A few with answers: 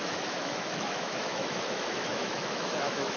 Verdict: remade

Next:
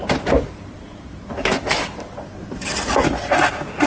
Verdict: recorded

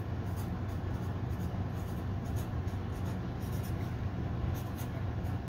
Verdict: recorded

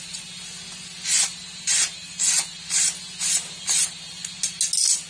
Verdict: recorded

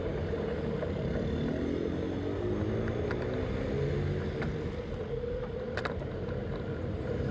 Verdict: recorded